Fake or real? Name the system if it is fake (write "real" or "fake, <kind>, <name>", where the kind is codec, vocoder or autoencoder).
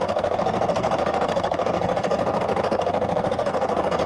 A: fake, codec, SNAC